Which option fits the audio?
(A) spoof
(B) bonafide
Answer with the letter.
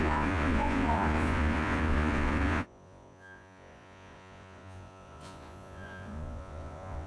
A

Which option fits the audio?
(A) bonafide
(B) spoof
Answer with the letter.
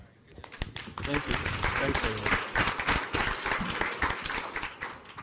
A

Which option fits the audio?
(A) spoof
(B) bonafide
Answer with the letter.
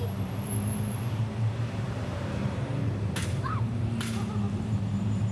A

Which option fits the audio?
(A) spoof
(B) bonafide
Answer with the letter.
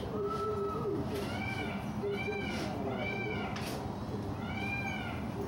B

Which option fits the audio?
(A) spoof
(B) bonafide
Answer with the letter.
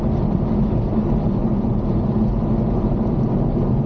B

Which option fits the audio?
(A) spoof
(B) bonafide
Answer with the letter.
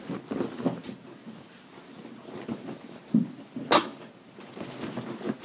B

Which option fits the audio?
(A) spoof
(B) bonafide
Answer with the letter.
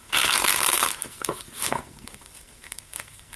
A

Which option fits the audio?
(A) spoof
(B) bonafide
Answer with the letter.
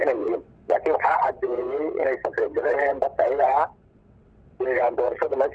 A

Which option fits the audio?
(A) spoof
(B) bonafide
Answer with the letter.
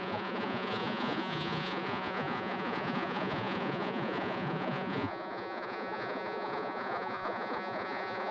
A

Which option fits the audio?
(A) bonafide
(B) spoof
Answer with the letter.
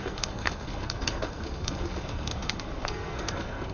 B